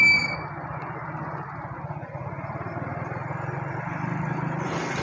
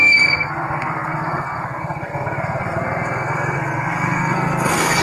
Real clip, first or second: first